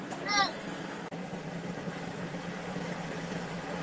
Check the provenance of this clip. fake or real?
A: real